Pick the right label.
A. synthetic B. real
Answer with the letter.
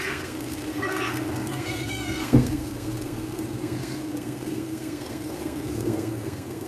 A